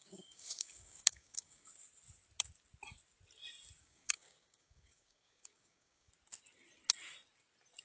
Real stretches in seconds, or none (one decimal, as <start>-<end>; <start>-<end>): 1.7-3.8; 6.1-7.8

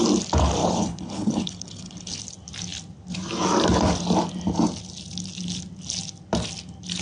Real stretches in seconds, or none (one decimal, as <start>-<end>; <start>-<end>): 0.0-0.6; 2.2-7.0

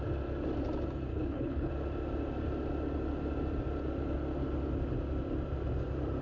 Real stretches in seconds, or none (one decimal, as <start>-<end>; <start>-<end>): 0.0-1.1; 1.7-6.2

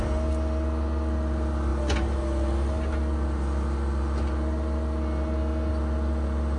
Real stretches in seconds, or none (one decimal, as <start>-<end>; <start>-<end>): 0.0-6.6

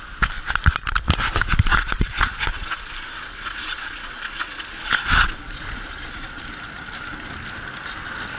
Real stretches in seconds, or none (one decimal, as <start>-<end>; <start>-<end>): 0.0-1.7; 6.4-8.4

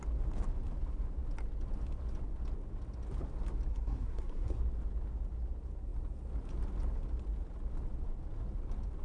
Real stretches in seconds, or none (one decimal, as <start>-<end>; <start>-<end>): 0.0-3.7; 4.6-9.0

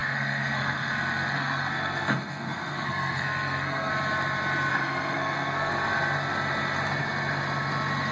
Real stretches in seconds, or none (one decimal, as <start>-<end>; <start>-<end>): 3.9-4.7; 5.7-8.1

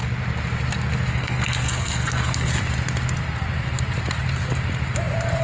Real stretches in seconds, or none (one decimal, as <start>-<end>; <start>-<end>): 0.0-1.1; 2.5-5.4